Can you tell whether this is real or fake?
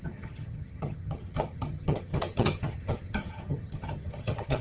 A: fake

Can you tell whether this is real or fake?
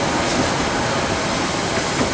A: real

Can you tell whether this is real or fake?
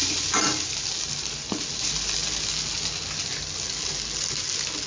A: real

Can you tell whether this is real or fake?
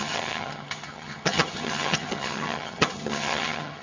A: fake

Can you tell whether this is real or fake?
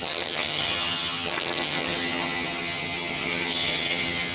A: fake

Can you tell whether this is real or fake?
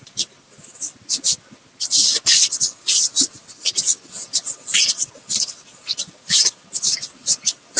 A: real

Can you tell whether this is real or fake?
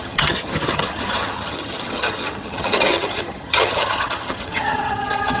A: fake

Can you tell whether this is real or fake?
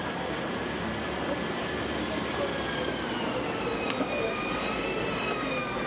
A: real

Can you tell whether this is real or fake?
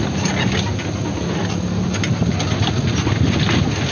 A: real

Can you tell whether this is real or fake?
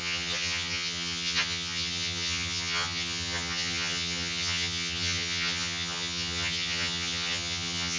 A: fake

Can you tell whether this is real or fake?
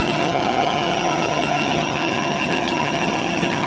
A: fake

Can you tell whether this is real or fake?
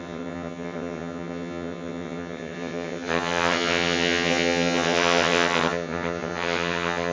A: fake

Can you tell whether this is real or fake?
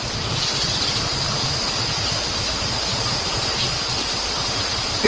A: real